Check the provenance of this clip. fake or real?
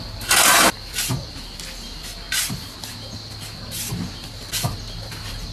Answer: real